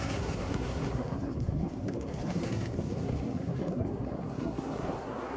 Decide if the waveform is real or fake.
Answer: fake